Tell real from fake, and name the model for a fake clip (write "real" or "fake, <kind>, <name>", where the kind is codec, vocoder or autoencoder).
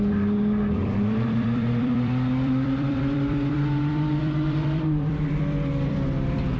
fake, vocoder, BigVGAN v2